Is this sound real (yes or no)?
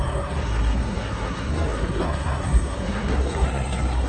no